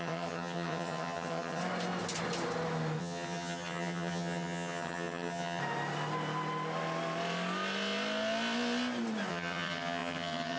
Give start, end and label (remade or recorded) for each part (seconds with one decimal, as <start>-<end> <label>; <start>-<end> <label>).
0.0-1.6 remade; 1.6-3.0 recorded; 3.0-5.6 remade; 5.6-9.3 recorded; 9.3-10.6 remade